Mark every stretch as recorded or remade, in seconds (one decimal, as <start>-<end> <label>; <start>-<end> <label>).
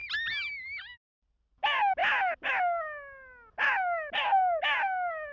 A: 0.0-5.3 recorded